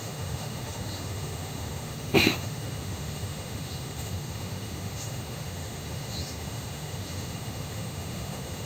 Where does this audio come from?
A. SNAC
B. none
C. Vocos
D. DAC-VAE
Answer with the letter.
D